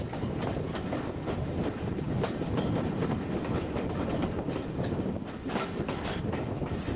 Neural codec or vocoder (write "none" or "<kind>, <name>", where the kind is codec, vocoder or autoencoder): none